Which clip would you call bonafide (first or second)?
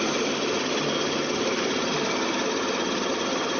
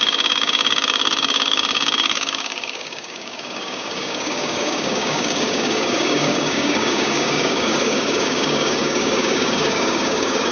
first